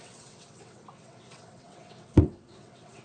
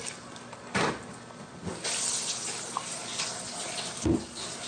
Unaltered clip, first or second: second